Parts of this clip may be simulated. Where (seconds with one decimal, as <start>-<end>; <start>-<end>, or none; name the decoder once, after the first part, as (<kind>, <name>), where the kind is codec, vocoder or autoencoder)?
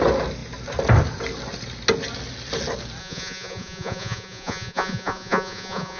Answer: 3.0-6.0 (vocoder, Vocos)